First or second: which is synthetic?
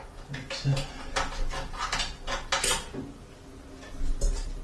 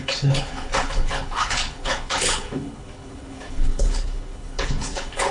second